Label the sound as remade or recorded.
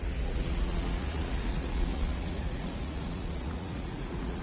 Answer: remade